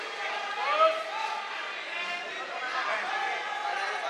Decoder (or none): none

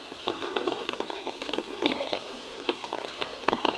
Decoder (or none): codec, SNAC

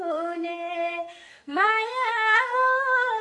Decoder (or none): codec, SNAC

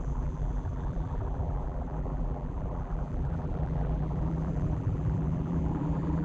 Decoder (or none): vocoder, BigVGAN v2